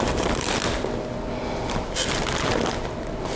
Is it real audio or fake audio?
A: fake